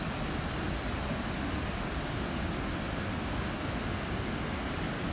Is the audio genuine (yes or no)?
yes